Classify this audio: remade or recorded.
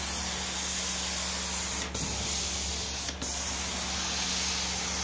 recorded